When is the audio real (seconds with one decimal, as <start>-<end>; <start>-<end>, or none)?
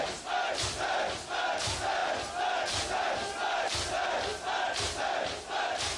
0.0-6.0